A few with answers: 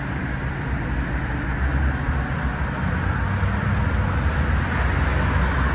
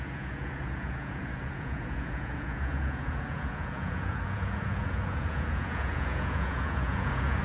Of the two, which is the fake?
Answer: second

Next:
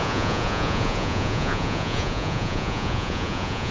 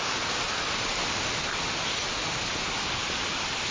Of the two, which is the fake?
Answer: first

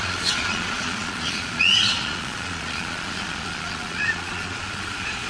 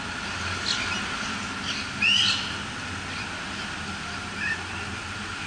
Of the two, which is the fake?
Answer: first